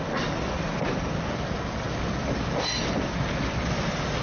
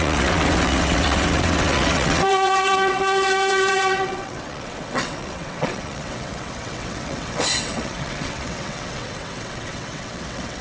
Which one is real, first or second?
first